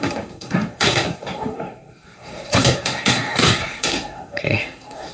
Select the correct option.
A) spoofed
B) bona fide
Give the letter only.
A